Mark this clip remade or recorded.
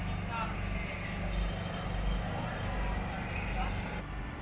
recorded